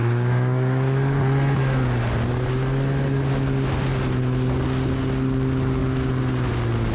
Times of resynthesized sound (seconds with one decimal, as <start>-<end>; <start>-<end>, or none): 0.0-1.2